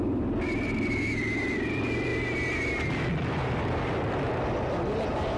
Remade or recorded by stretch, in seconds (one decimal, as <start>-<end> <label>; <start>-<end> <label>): 0.0-2.1 remade; 2.1-5.4 recorded